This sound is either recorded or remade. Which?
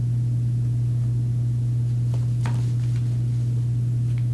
recorded